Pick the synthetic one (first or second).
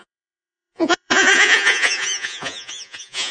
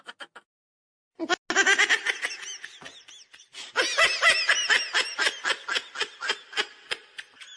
first